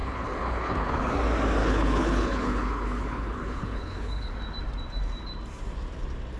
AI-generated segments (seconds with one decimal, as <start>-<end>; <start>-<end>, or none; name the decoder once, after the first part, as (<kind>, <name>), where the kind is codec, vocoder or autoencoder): 0.0-1.1 (codec, HILCodec); 1.6-4.3